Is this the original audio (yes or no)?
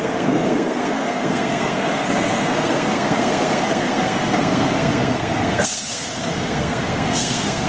no